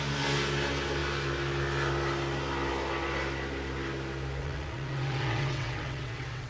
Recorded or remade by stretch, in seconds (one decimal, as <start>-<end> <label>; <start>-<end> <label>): 0.0-4.4 recorded; 4.4-6.5 remade